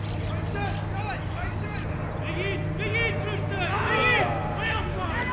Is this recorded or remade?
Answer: recorded